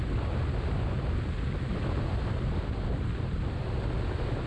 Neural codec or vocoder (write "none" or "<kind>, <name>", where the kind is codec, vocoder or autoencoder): none